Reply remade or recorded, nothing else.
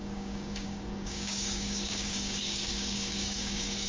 remade